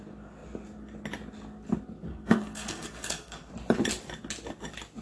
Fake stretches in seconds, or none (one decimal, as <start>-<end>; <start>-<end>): 2.1-3.5